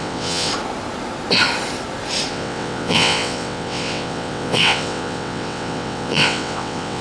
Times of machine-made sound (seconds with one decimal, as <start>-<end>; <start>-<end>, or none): 0.0-0.5; 2.3-7.0